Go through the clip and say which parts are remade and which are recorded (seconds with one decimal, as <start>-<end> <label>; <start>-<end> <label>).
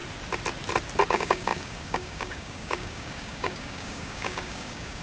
0.0-1.1 recorded; 1.1-5.0 remade